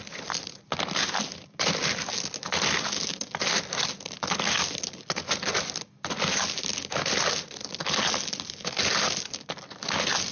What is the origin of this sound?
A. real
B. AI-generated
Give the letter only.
A